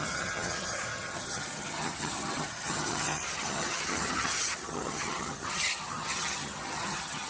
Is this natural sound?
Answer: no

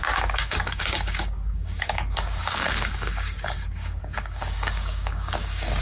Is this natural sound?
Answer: no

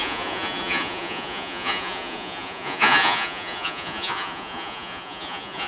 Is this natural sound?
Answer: no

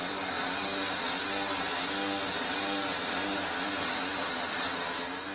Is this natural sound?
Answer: yes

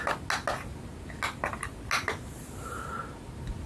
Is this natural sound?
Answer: yes